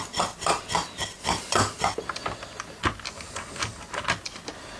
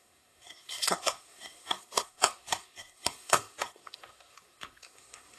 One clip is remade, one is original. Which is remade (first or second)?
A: second